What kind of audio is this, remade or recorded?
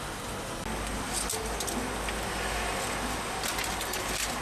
recorded